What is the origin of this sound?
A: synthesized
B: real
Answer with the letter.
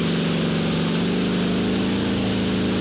B